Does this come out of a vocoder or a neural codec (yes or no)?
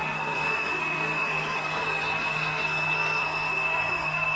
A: yes